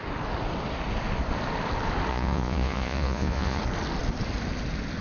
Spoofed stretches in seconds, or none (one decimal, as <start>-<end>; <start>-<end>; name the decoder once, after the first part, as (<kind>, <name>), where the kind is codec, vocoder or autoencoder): 2.1-3.6 (vocoder, Vocos)